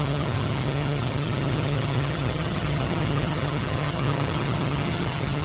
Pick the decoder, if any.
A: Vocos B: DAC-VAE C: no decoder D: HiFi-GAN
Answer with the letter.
D